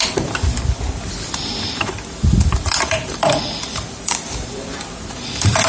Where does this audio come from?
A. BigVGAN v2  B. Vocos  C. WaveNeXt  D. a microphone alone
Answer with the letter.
A